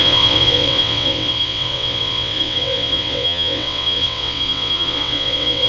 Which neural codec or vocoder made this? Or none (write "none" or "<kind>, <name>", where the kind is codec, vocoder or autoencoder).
vocoder, WaveNeXt